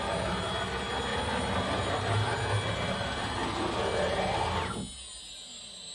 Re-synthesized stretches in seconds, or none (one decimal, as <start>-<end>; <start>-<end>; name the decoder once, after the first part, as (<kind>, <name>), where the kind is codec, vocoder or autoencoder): none